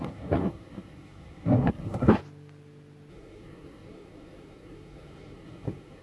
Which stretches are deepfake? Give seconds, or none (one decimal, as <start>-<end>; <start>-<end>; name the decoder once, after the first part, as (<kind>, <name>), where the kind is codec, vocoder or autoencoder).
0.0-2.2 (codec, SNAC); 3.1-6.0